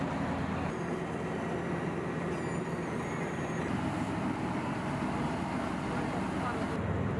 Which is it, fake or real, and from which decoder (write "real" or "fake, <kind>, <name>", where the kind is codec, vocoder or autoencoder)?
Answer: real